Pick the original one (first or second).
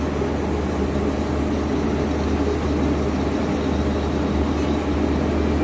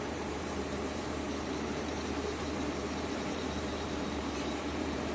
first